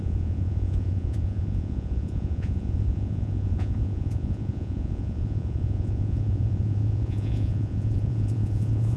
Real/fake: fake